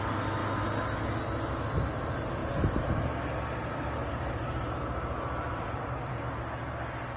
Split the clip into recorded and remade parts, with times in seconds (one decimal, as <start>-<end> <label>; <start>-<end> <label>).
0.0-2.4 recorded; 2.4-5.8 remade; 5.8-7.2 recorded